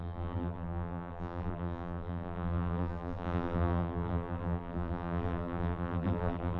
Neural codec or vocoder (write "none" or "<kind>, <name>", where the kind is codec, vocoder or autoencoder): vocoder, BigVGAN v2